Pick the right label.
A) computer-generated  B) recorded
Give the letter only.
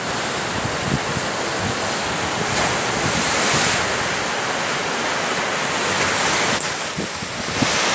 B